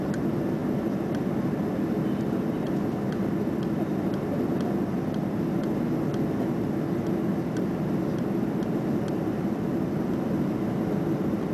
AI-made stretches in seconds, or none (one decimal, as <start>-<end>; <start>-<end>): none